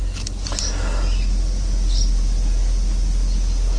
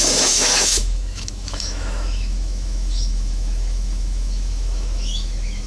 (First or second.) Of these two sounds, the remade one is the second